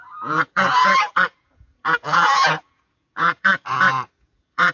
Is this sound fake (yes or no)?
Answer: yes